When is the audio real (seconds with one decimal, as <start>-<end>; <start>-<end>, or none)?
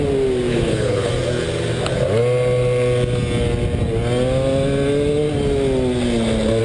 0.0-0.5; 1.1-6.6